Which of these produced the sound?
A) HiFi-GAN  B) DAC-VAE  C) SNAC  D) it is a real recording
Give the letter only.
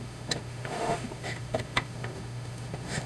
B